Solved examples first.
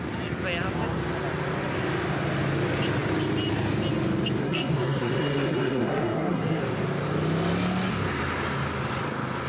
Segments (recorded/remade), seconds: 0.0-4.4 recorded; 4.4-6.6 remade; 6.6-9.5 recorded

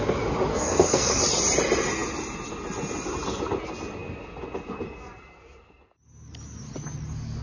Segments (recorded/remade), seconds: 0.0-0.5 recorded; 0.5-1.2 remade; 1.2-7.4 recorded

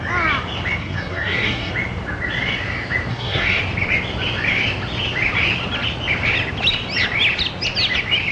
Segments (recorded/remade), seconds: 0.0-0.8 recorded; 0.8-1.7 remade; 1.7-3.1 recorded; 3.1-3.6 remade; 3.6-8.3 recorded

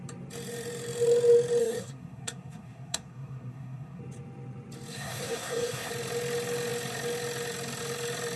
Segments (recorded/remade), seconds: 0.0-1.6 recorded; 1.6-4.0 remade; 4.0-4.9 recorded; 4.9-5.9 remade; 5.9-8.4 recorded